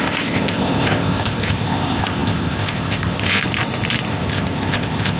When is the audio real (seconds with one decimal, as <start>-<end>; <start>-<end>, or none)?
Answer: 3.4-4.1